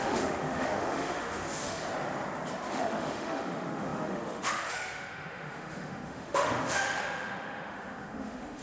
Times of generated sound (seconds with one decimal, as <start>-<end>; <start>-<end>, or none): 0.0-1.8; 2.7-8.6